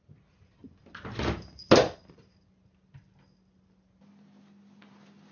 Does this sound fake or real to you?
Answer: real